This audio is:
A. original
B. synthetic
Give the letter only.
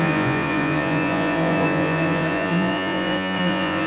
B